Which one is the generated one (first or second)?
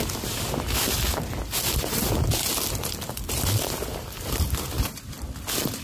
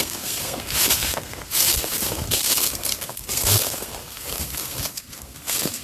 second